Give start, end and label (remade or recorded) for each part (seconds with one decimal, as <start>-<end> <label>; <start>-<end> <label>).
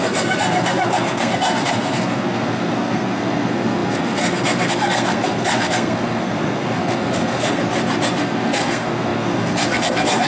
0.0-7.6 remade; 7.6-8.2 recorded; 8.2-10.3 remade